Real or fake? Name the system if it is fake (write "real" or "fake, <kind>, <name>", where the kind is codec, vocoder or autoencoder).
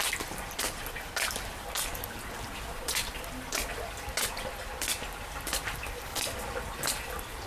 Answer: real